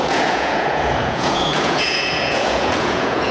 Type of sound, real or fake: fake